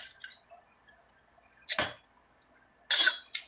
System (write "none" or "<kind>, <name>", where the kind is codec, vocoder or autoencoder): none